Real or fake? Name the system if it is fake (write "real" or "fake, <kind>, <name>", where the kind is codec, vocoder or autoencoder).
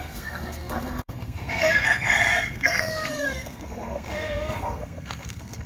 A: fake, codec, SNAC